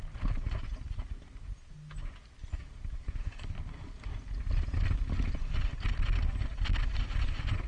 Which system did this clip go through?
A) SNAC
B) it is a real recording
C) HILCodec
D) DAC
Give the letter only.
B